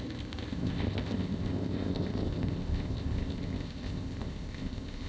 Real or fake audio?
fake